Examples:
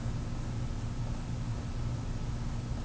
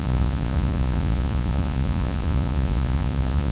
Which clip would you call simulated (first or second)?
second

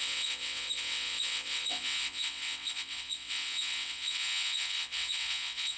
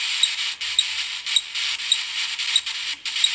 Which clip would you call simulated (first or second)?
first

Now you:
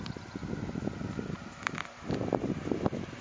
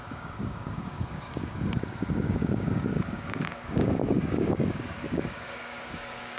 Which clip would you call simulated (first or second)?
second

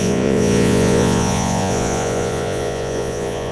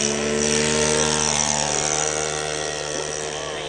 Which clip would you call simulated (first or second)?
first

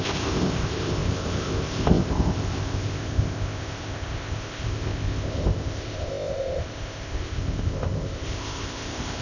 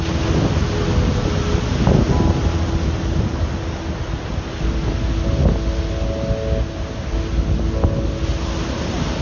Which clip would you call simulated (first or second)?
first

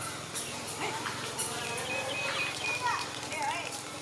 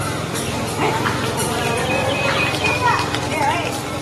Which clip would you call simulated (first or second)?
second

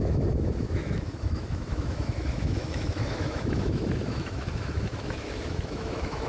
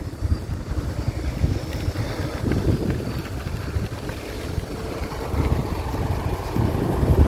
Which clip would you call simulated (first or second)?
first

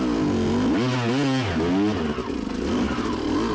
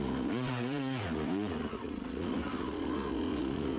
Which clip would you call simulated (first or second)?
second